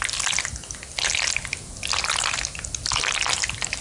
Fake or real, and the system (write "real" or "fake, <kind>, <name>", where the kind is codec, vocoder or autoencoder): real